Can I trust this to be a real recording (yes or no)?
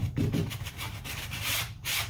no